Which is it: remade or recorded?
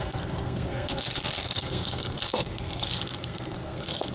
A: remade